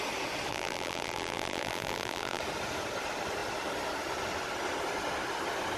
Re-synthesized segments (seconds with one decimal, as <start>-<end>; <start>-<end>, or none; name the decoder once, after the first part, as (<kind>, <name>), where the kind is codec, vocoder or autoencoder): 0.5-2.4 (vocoder, BigVGAN v2)